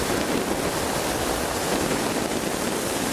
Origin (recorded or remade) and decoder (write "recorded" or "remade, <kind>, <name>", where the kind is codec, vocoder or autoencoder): recorded